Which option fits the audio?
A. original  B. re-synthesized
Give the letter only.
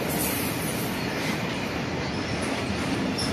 A